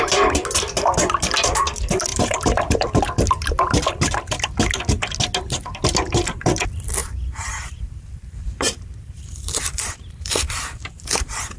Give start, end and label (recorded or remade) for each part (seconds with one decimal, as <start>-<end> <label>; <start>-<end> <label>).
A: 0.0-2.1 recorded; 2.1-3.0 remade; 3.0-7.0 recorded; 7.0-11.6 remade

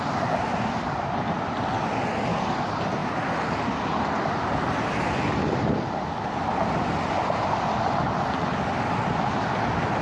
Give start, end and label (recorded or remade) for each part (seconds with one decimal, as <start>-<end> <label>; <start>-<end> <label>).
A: 0.0-10.0 recorded

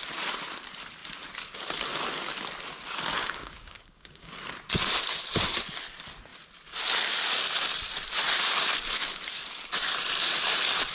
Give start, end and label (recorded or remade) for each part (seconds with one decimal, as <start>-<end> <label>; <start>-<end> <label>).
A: 0.0-3.2 recorded; 3.2-4.3 remade; 4.3-10.9 recorded